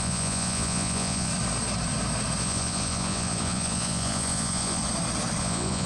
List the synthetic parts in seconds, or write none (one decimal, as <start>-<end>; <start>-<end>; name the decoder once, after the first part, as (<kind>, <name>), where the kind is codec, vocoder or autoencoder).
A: 0.0-1.3 (vocoder, Vocos); 2.4-4.8; 5.4-5.9